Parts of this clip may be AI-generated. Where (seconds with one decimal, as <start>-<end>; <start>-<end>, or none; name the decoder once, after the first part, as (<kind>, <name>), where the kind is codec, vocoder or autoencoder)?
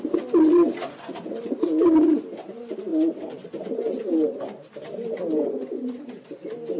4.0-5.6 (vocoder, BigVGAN v2)